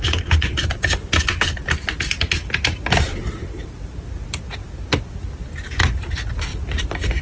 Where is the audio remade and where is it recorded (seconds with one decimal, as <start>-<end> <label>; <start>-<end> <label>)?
0.0-7.2 recorded